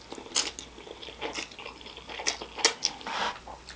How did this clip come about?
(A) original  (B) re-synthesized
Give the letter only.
A